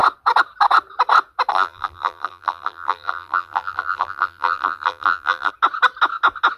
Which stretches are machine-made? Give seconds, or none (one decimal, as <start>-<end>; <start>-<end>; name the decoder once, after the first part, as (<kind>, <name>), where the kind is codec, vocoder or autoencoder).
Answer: 1.5-5.5 (vocoder, BigVGAN v2)